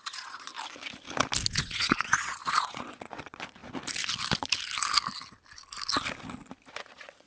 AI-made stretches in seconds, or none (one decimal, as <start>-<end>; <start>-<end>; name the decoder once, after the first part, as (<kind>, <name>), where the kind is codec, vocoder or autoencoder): 0.0-0.5 (vocoder, Vocos); 1.5-3.6; 6.7-7.3